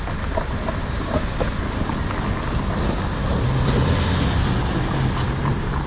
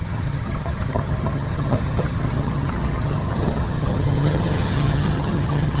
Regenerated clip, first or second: second